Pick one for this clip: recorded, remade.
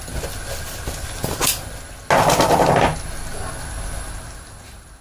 recorded